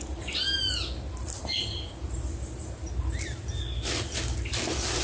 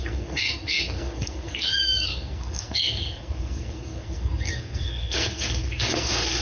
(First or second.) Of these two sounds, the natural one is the first